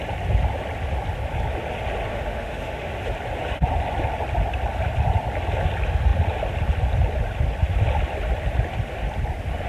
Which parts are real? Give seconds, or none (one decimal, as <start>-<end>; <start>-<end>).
0.0-2.1; 2.9-9.7